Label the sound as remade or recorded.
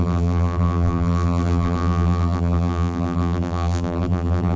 remade